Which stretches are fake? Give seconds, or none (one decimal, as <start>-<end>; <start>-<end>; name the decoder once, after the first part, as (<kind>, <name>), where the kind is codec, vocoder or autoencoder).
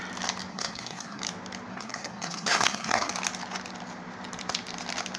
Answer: 0.5-1.2 (codec, SNAC); 1.7-3.1